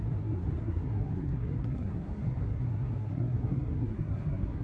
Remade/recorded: remade